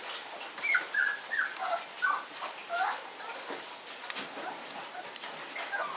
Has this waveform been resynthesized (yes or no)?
yes